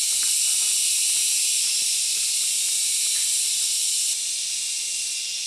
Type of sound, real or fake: real